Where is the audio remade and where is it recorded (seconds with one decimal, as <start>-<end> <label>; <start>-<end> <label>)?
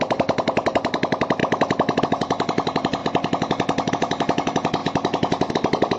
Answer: 0.0-1.4 remade; 1.4-2.0 recorded; 2.0-3.0 remade; 3.0-3.9 recorded; 3.9-4.8 remade; 4.8-5.5 recorded; 5.5-6.0 remade